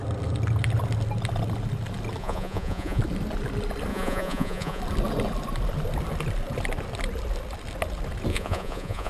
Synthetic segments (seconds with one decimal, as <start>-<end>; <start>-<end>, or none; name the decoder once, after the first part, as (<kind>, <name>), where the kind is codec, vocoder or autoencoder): 2.2-3.0 (vocoder, Vocos); 3.9-4.8; 8.3-9.1